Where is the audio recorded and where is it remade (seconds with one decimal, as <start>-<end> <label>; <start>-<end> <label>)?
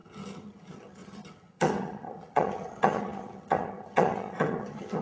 0.0-5.0 remade